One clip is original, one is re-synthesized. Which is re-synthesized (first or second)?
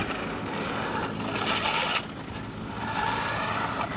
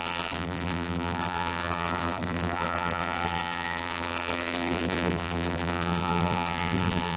second